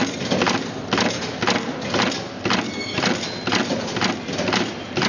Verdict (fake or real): real